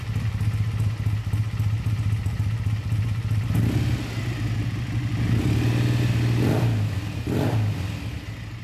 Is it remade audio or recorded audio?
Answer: recorded